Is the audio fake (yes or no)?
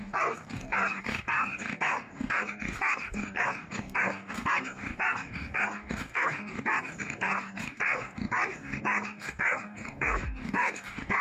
yes